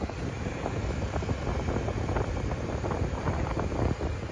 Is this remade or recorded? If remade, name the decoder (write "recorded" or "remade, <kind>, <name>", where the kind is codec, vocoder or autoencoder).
recorded